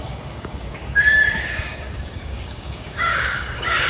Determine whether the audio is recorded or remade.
remade